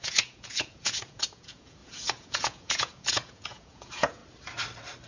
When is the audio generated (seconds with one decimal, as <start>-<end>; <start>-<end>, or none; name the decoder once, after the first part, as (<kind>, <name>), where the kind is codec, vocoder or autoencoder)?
0.0-4.2 (vocoder, Vocos)